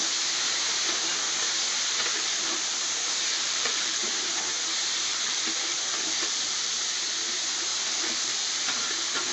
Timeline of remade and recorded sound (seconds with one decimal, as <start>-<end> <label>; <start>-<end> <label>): 0.0-2.1 recorded; 2.1-2.7 remade; 2.7-3.3 recorded; 3.3-4.1 remade; 4.1-5.1 recorded; 5.1-6.7 remade; 6.7-7.7 recorded; 7.7-8.6 remade; 8.6-9.3 recorded